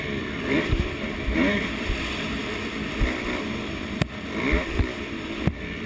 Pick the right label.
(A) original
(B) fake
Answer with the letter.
A